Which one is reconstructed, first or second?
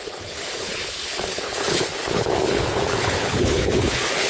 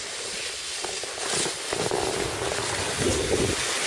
first